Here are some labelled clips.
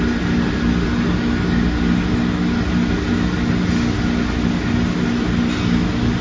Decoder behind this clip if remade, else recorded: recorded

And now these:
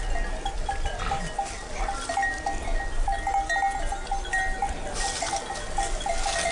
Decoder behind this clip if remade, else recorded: recorded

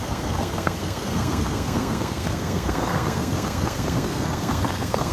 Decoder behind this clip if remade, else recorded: remade, codec, SNAC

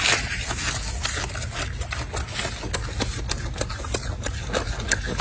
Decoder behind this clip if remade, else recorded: recorded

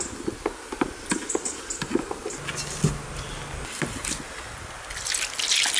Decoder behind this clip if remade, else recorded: recorded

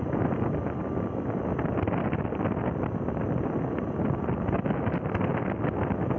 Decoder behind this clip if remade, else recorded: recorded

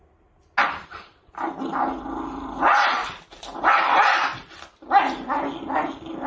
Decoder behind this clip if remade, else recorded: recorded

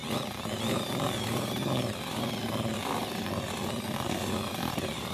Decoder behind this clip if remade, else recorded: recorded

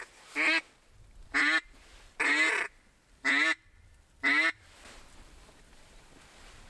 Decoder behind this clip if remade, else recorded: recorded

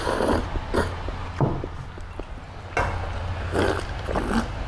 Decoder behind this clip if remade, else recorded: recorded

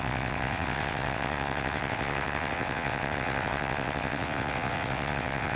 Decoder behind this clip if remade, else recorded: remade, vocoder, WaveNeXt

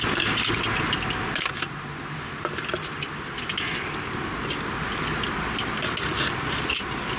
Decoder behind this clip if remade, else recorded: recorded